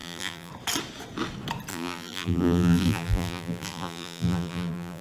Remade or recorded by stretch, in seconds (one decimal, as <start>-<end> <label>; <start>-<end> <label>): 0.0-0.5 remade; 0.5-1.7 recorded; 1.7-5.0 remade